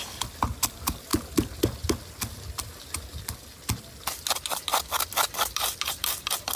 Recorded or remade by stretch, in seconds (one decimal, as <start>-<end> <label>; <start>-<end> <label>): 0.0-1.1 remade; 1.1-2.9 recorded; 2.9-6.6 remade